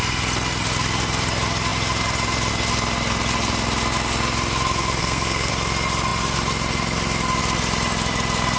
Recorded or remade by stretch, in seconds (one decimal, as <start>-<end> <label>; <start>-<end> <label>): 0.0-5.0 recorded; 5.0-5.5 remade; 5.5-8.6 recorded